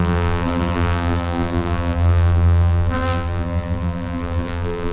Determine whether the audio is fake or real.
fake